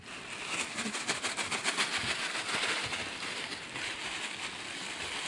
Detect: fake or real real